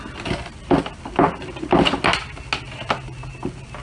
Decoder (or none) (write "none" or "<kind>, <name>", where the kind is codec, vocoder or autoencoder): none